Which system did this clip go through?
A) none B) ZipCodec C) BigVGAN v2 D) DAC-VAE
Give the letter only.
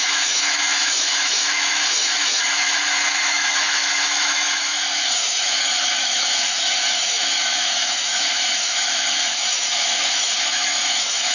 D